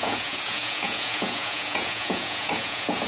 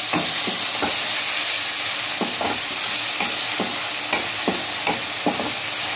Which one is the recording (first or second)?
second